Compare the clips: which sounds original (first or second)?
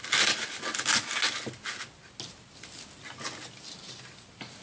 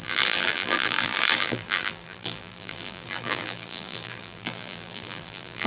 first